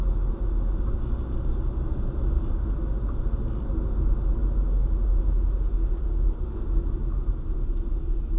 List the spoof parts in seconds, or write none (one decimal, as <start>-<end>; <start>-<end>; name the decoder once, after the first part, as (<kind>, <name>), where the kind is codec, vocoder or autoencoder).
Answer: none